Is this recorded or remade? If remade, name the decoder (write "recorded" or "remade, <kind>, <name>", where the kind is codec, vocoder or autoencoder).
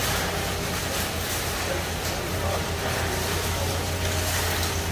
recorded